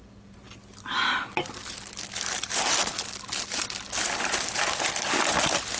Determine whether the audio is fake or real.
real